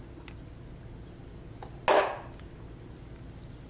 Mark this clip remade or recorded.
recorded